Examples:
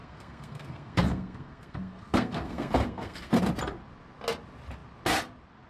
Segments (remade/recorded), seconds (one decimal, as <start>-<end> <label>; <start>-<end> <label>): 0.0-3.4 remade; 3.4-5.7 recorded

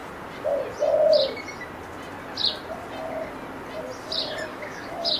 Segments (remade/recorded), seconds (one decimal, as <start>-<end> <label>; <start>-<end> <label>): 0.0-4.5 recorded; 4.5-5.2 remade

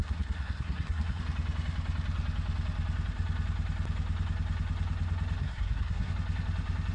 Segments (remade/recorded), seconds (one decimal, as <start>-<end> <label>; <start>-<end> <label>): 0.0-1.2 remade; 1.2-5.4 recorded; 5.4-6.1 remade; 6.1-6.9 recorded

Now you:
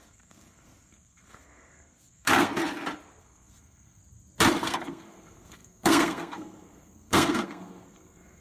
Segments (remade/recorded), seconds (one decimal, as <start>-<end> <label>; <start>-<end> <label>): 0.0-2.5 remade; 2.5-3.2 recorded; 3.2-4.0 remade; 4.0-4.6 recorded; 4.6-8.4 remade